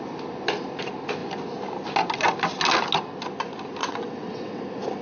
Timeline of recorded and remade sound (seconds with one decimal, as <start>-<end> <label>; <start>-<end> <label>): 0.0-3.8 recorded; 3.8-4.6 remade; 4.6-5.0 recorded